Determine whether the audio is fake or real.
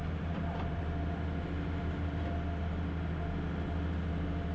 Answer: real